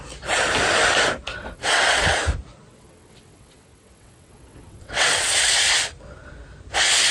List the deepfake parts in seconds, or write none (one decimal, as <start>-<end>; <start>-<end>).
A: 1.3-2.1; 2.7-5.6